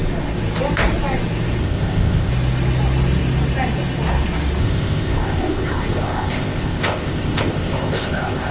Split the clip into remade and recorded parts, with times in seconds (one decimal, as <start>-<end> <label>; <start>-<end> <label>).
0.0-1.6 recorded; 1.6-2.3 remade; 2.3-4.6 recorded; 4.6-8.5 remade